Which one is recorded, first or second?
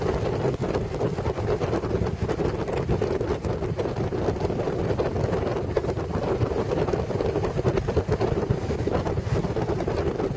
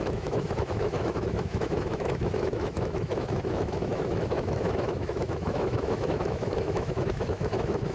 first